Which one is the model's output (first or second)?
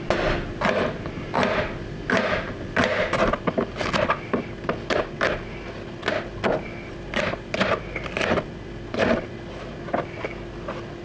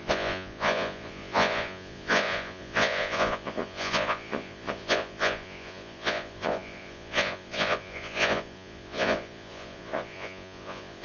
second